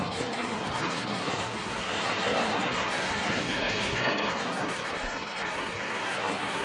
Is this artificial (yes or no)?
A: yes